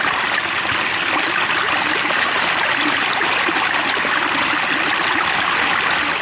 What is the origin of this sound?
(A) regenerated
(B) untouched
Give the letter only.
B